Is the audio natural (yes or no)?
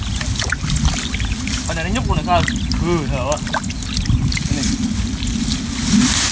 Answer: yes